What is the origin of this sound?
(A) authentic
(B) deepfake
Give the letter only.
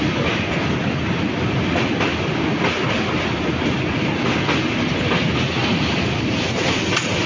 A